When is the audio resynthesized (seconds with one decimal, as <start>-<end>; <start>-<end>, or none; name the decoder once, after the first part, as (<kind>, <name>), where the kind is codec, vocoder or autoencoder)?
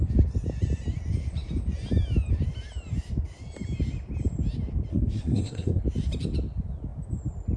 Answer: 4.9-5.8 (codec, SNAC)